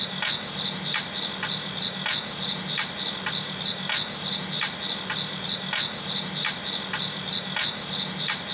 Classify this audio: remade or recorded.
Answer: recorded